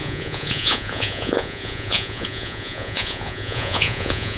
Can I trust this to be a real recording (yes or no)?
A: no